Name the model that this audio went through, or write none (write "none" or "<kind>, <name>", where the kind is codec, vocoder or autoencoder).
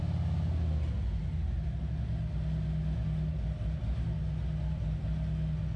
none